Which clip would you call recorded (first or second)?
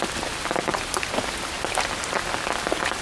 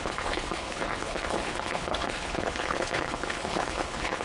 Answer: first